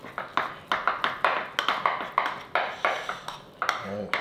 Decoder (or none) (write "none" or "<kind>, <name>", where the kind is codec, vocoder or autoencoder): none